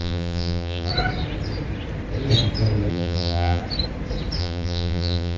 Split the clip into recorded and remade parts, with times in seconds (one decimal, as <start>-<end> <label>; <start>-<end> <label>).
0.0-0.9 remade; 0.9-2.9 recorded; 2.9-3.6 remade; 3.6-4.4 recorded; 4.4-5.4 remade